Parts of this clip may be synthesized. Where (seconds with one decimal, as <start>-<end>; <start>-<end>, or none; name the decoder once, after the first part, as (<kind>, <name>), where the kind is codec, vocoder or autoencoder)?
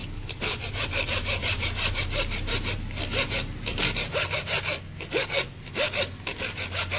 0.0-0.6 (codec, DAC)